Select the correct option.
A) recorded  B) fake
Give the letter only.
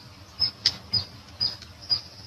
A